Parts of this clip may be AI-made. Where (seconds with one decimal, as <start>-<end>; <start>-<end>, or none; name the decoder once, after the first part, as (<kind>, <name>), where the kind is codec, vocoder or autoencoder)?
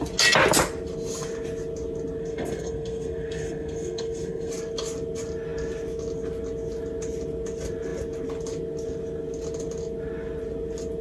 2.2-4.5 (codec, SNAC)